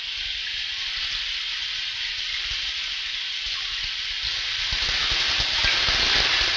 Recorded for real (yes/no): yes